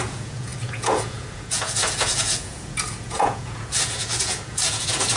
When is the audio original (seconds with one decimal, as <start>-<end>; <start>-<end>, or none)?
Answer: none